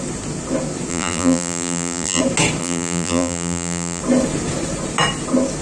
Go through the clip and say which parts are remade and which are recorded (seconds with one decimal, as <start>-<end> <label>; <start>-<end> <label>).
0.0-0.9 recorded; 0.9-2.2 remade; 2.2-2.6 recorded; 2.6-4.0 remade; 4.0-5.6 recorded

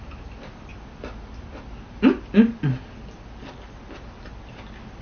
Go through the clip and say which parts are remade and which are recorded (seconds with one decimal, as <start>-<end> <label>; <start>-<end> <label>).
0.0-5.0 recorded